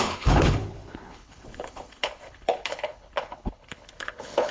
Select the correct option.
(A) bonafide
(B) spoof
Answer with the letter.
B